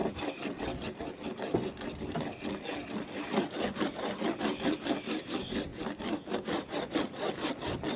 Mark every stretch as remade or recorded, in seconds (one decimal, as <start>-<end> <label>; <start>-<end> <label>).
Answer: 0.0-4.4 remade; 4.4-5.7 recorded; 5.7-7.5 remade; 7.5-8.0 recorded